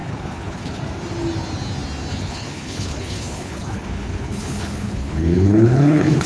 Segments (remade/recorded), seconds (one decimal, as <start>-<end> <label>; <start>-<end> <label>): 0.0-0.8 remade; 0.8-2.1 recorded; 2.1-6.3 remade